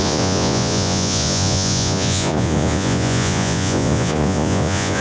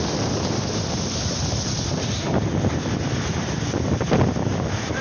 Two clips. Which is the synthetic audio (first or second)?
first